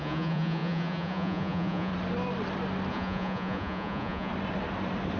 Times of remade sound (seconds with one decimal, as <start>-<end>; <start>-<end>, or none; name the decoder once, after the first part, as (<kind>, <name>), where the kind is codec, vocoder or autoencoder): 0.0-1.9 (vocoder, Vocos); 2.9-4.3